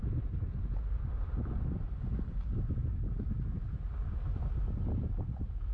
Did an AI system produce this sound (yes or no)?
no